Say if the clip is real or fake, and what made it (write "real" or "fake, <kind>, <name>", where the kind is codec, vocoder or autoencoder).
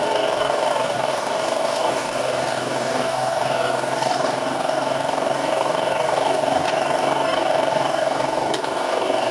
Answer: fake, codec, DAC